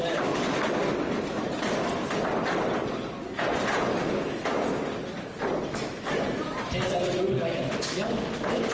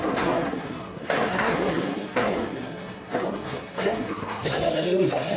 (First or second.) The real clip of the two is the first